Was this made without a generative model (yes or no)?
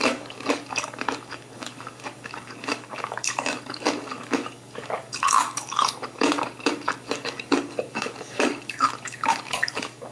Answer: no